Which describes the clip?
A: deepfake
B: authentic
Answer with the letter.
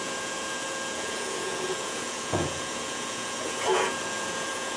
A